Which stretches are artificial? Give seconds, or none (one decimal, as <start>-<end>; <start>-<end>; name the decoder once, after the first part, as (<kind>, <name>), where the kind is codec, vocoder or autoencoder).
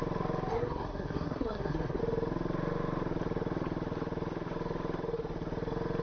0.5-2.0 (codec, SNAC)